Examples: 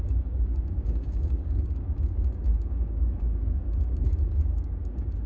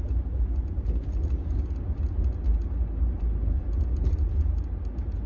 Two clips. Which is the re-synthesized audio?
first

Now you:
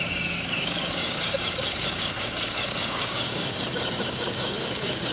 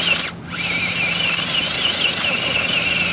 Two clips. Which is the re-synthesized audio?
first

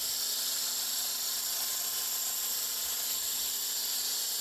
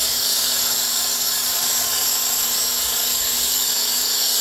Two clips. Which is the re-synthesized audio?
second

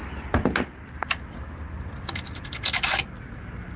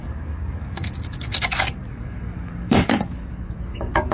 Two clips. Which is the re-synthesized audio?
second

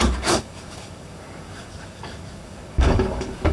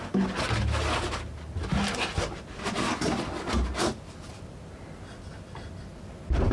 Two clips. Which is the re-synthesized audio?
first